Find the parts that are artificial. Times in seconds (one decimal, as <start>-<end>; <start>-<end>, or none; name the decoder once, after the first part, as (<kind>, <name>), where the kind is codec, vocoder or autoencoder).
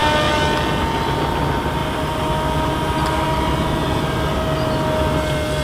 none